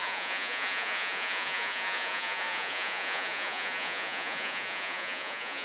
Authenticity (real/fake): fake